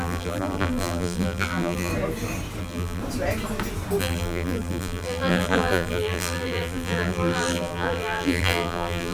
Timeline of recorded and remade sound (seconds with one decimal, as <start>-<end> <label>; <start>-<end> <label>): 0.0-1.9 remade; 1.9-2.6 recorded; 2.6-3.0 remade; 3.0-4.0 recorded; 4.0-9.1 remade